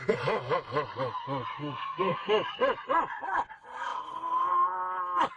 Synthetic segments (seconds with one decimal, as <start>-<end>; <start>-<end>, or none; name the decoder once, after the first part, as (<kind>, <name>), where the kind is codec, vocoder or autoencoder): 1.6-2.3 (codec, SNAC)